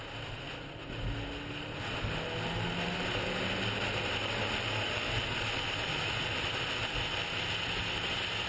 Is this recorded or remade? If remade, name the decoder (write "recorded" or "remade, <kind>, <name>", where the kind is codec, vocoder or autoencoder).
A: recorded